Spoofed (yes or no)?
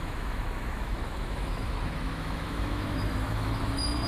yes